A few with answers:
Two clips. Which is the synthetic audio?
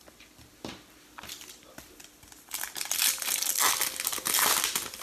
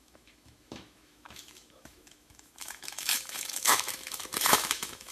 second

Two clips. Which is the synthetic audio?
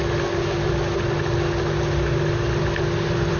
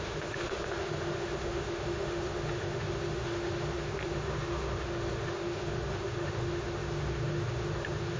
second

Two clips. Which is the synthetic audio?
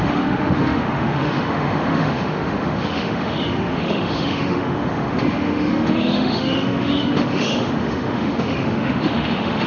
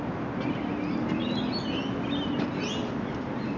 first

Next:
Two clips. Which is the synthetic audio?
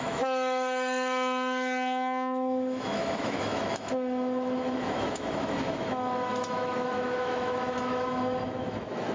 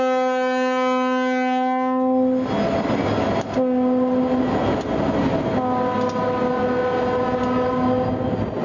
first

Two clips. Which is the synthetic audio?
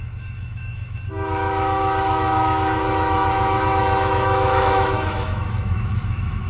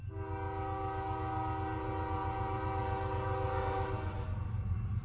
first